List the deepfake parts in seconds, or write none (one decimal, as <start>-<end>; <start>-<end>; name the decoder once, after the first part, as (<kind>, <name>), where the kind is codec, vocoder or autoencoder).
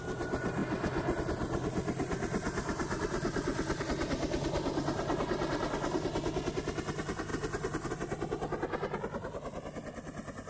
none